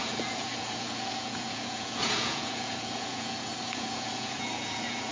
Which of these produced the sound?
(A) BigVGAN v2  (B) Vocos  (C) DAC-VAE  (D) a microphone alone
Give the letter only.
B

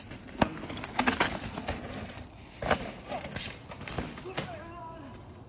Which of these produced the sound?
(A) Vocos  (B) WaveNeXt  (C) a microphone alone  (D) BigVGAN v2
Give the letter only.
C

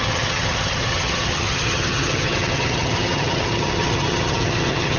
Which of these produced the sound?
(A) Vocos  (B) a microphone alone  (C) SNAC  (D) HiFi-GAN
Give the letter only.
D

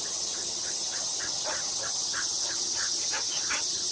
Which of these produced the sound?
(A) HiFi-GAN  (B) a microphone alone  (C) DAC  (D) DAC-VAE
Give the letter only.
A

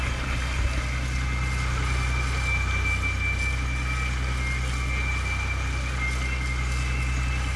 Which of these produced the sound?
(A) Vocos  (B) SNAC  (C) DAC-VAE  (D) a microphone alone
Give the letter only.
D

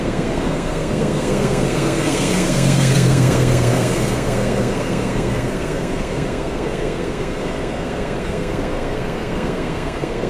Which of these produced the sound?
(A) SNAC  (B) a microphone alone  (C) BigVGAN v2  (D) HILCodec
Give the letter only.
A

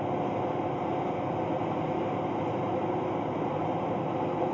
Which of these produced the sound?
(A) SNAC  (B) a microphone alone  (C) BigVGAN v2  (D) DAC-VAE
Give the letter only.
B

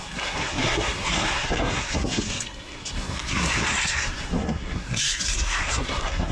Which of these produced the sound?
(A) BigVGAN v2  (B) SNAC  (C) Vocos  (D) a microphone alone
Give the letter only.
B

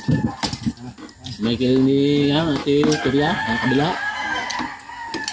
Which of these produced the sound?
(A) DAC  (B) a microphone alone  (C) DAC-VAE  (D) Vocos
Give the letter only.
B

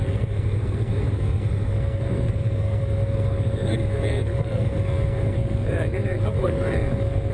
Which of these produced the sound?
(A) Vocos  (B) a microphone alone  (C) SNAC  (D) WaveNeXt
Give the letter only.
C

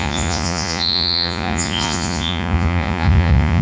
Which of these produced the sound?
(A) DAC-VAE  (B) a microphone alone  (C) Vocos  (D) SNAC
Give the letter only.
C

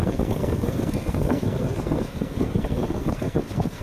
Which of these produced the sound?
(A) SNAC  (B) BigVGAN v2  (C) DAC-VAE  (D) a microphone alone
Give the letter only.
A